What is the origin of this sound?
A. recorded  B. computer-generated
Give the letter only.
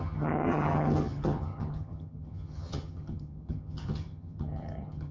B